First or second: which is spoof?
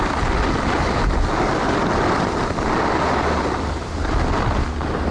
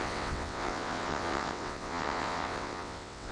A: second